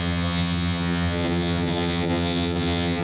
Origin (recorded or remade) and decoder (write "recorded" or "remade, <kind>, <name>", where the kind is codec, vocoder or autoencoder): remade, vocoder, HiFi-GAN